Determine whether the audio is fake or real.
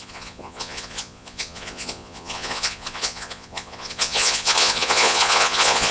fake